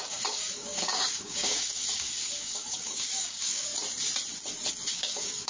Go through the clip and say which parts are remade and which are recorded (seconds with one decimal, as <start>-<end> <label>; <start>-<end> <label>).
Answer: 0.0-3.7 remade; 3.7-4.9 recorded; 4.9-5.5 remade